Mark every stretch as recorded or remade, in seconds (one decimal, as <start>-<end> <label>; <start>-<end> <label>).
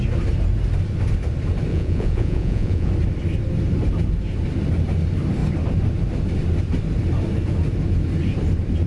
0.0-1.7 recorded; 1.7-2.9 remade; 2.9-8.9 recorded